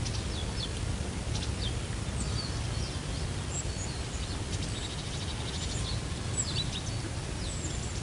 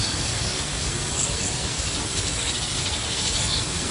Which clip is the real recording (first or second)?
first